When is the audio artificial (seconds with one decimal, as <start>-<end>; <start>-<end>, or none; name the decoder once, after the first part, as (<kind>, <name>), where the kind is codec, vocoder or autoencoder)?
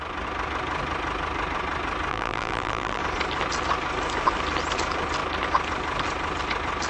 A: 2.1-3.0 (vocoder, BigVGAN v2)